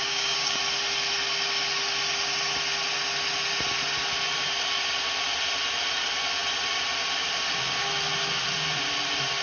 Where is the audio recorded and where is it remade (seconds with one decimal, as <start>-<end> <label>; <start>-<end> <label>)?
0.0-0.6 remade; 0.6-9.4 recorded